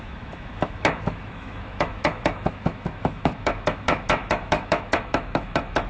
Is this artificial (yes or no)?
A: yes